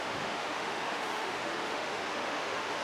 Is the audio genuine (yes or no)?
no